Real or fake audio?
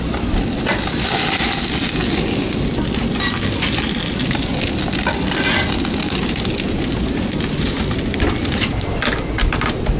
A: real